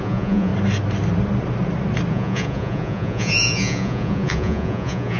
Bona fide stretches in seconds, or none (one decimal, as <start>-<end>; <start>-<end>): 0.5-2.1